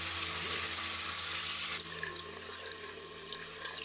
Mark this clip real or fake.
real